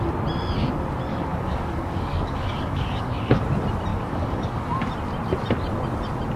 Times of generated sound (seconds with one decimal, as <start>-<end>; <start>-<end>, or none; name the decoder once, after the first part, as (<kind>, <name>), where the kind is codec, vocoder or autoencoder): 1.1-3.4 (codec, DAC); 3.9-4.6